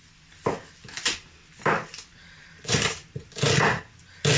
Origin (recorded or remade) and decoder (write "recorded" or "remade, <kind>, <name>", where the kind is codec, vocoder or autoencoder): recorded